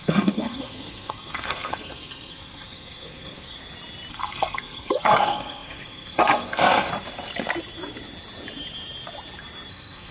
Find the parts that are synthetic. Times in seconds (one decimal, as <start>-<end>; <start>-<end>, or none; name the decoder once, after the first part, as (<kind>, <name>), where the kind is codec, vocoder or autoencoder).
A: 0.0-3.6 (codec, SNAC); 4.1-6.9; 9.7-10.1